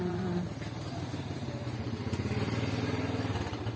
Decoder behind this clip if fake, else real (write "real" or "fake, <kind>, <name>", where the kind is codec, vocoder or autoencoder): fake, vocoder, BigVGAN v2